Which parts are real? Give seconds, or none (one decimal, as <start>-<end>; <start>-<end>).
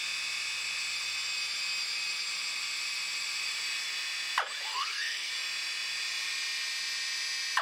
0.0-4.7; 5.3-7.6